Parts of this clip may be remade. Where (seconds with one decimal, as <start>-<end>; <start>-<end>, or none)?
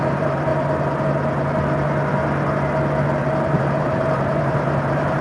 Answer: 0.0-0.5; 3.6-5.2